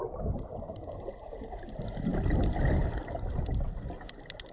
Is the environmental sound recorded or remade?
recorded